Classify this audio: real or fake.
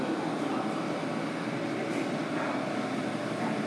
real